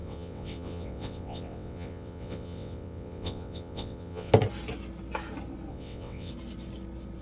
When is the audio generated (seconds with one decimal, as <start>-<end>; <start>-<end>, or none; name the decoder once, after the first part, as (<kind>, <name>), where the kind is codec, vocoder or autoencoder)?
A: 0.0-4.3 (vocoder, WaveNeXt); 5.7-6.3